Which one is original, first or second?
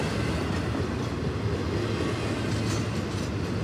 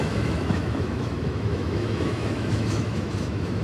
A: first